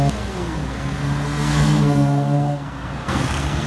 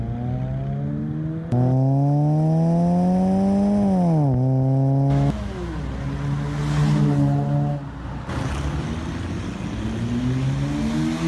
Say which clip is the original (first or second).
second